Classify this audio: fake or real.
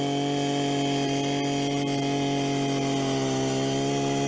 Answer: real